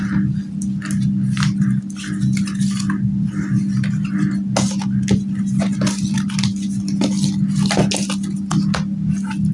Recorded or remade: recorded